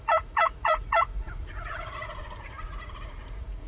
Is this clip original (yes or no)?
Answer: no